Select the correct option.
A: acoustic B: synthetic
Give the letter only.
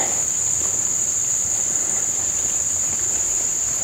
B